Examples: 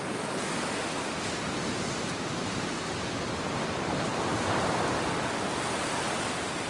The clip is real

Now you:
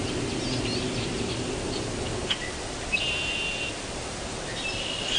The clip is real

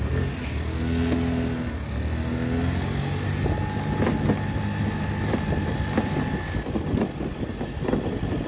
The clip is real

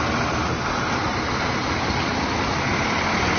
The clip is real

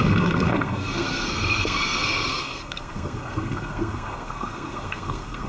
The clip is fake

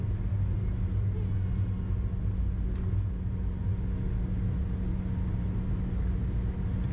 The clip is real